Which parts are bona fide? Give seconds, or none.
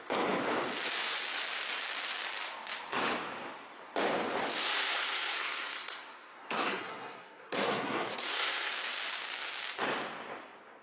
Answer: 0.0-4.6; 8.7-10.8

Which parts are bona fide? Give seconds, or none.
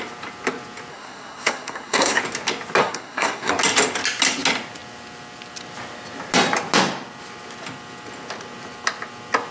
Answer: 0.0-0.9; 2.2-2.8; 3.5-9.5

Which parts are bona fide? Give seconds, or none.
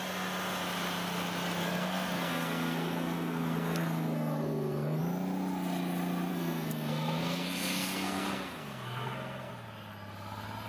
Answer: 0.0-1.6; 5.0-6.3; 9.5-10.7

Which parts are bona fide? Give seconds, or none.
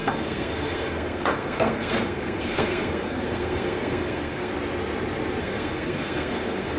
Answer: 4.5-5.4